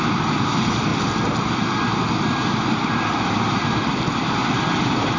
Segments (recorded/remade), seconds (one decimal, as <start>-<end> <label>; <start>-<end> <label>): 0.0-0.9 remade; 0.9-2.2 recorded; 2.2-4.4 remade; 4.4-5.2 recorded